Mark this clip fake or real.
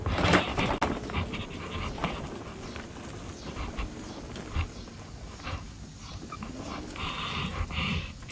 real